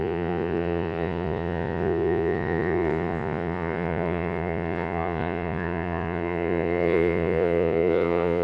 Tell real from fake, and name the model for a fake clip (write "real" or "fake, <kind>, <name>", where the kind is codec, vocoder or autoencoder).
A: fake, vocoder, Vocos